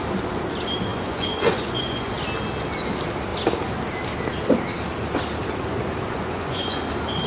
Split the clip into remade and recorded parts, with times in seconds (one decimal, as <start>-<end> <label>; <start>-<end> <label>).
0.0-0.9 recorded; 0.9-2.1 remade; 2.1-6.1 recorded; 6.1-6.8 remade; 6.8-7.3 recorded